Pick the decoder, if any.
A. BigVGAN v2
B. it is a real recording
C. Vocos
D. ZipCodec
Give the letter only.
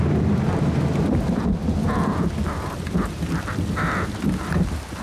B